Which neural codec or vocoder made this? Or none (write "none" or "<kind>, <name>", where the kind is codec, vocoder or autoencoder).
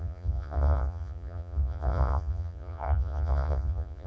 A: vocoder, Vocos